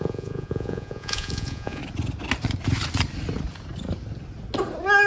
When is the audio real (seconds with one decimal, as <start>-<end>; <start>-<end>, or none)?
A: 1.8-5.1